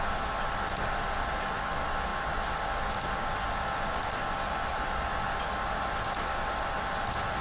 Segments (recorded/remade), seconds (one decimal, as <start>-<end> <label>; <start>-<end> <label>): 0.0-2.1 recorded; 2.1-2.7 remade; 2.7-7.4 recorded